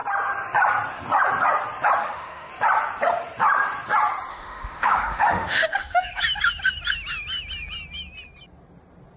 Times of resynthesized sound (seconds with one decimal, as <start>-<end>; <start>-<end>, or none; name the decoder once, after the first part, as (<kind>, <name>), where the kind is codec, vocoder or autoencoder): 2.0-2.5 (autoencoder, DAC-VAE); 4.3-6.2